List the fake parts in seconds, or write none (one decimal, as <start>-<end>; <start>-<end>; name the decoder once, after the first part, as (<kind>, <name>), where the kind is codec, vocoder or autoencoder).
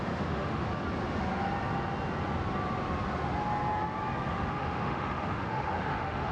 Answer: 0.0-0.7 (autoencoder, DAC-VAE); 4.3-6.3